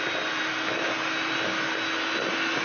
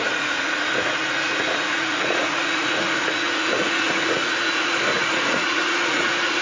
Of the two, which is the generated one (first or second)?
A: second